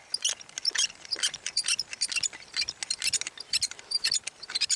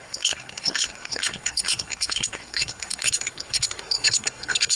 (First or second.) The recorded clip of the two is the first